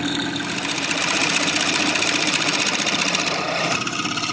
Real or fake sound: real